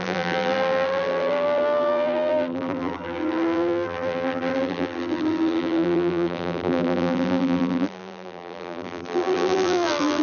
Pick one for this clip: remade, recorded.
remade